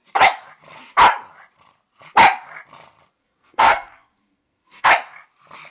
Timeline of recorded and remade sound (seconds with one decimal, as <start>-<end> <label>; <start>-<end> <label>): 0.0-3.2 recorded; 3.2-4.9 remade; 4.9-5.7 recorded

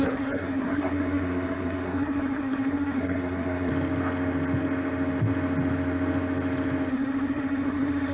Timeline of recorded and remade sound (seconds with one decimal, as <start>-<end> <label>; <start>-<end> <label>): 0.0-3.7 remade; 3.7-6.9 recorded; 6.9-8.1 remade

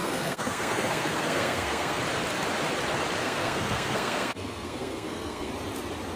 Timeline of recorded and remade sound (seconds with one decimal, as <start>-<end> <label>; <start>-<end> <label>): 0.0-2.0 remade; 2.0-3.2 recorded; 3.2-5.5 remade; 5.5-6.2 recorded

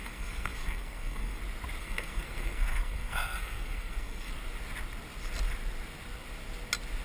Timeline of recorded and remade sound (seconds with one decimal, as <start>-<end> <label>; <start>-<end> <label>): 0.0-1.4 remade; 1.4-1.8 recorded; 1.8-4.3 remade; 4.3-7.0 recorded

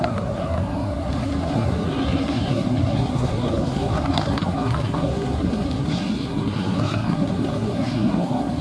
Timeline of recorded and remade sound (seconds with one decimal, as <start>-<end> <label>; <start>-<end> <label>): 0.0-8.6 remade

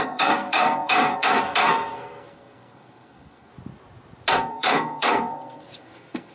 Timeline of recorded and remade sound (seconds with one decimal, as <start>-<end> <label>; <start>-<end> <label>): 0.0-3.5 remade; 3.5-4.3 recorded; 4.3-6.3 remade

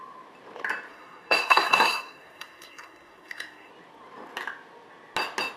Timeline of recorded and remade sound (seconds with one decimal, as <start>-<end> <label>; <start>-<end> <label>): 0.0-0.9 recorded; 0.9-3.7 remade; 3.7-5.6 recorded

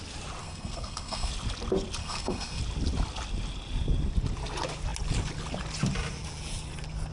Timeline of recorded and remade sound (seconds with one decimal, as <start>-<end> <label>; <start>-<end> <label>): 0.0-0.4 recorded; 0.4-1.3 remade; 1.3-2.0 recorded; 2.0-2.6 remade; 2.6-7.1 recorded